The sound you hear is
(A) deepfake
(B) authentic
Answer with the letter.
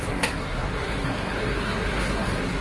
A